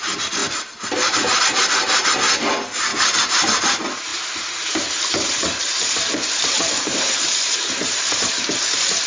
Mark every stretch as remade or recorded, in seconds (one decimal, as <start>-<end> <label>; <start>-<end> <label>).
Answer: 0.0-0.4 recorded; 0.4-1.4 remade; 1.4-2.9 recorded; 2.9-3.6 remade; 3.6-4.1 recorded; 4.1-8.3 remade; 8.3-9.1 recorded